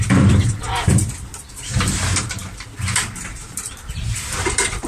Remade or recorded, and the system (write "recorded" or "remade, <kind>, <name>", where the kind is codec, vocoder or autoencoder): remade, vocoder, BigVGAN v2